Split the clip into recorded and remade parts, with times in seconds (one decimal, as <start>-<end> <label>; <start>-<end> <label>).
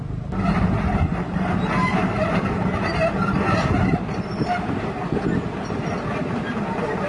0.0-7.1 remade